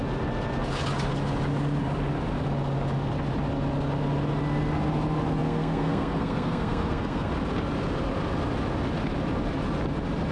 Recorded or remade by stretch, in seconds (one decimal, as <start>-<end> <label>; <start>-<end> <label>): 0.0-5.4 recorded; 5.4-7.3 remade; 7.3-10.3 recorded